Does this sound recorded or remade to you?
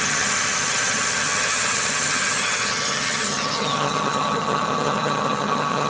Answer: remade